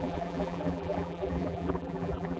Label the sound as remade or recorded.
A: remade